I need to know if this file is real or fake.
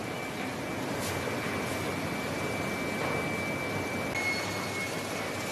real